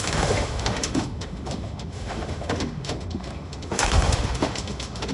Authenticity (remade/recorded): remade